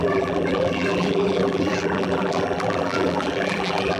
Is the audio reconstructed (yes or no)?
yes